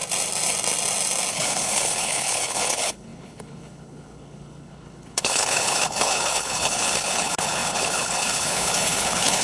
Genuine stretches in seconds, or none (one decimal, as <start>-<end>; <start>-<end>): 0.0-1.3